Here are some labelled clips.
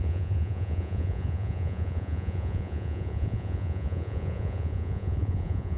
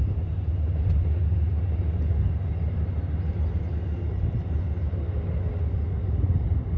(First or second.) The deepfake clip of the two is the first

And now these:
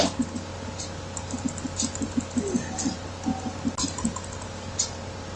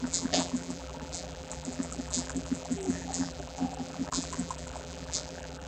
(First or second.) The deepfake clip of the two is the second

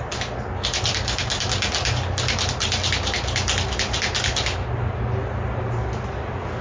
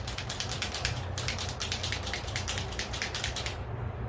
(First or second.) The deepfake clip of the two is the second